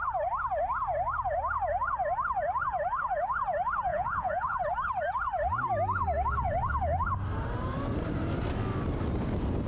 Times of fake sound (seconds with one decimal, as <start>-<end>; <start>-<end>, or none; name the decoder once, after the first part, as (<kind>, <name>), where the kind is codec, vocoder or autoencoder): 3.9-4.6 (vocoder, Vocos)